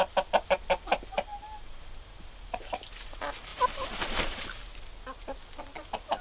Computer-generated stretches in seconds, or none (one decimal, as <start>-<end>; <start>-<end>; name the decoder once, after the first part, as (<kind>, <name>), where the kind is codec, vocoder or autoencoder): 3.5-4.6 (vocoder, BigVGAN v2)